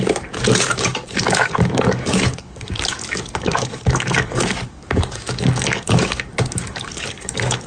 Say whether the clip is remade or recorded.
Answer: remade